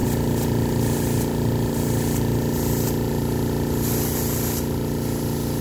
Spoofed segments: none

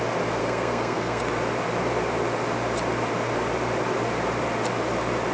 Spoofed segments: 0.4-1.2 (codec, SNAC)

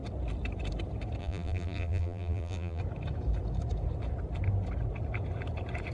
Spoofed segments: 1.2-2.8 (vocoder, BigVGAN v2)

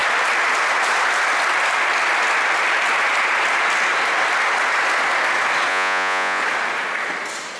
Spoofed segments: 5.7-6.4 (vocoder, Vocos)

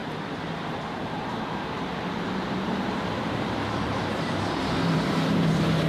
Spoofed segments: 0.6-5.9 (vocoder, BigVGAN v2)

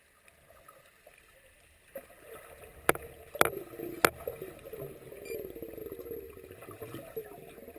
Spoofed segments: none

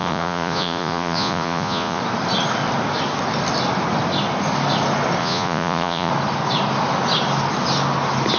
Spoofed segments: 0.0-2.0 (vocoder, Vocos); 5.2-6.1

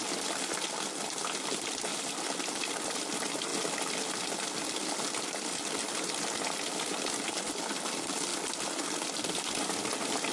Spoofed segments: none